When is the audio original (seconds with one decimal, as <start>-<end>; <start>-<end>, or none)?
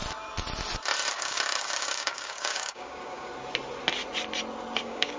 0.0-1.1; 3.3-4.8